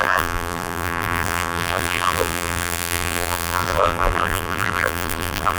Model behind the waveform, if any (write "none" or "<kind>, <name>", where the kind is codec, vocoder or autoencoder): vocoder, BigVGAN v2